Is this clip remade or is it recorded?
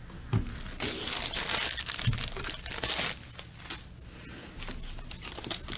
recorded